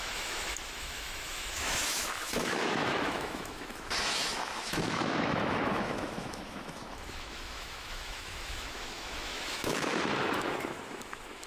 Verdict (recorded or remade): remade